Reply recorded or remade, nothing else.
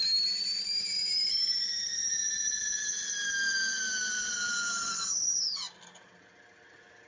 recorded